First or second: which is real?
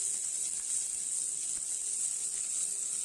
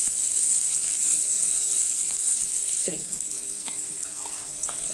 first